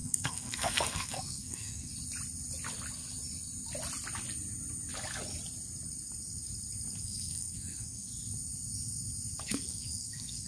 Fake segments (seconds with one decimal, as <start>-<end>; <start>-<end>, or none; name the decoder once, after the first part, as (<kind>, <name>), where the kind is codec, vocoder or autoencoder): 0.0-1.9 (codec, SNAC); 7.0-8.1; 9.4-10.5